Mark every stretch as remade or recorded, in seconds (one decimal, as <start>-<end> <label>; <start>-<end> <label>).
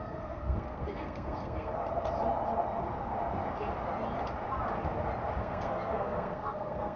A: 0.0-1.8 remade; 1.8-5.4 recorded; 5.4-7.0 remade